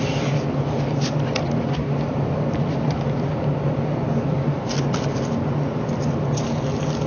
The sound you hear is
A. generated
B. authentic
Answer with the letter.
B